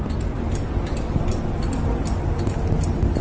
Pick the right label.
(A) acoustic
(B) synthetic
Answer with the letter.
A